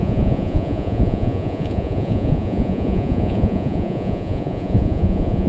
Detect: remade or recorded remade